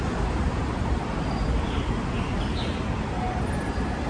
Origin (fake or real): fake